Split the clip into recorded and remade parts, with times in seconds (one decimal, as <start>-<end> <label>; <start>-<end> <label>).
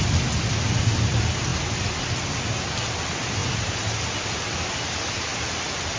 0.0-6.0 recorded